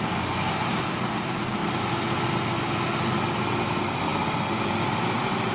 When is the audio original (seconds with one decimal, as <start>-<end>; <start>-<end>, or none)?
0.0-5.5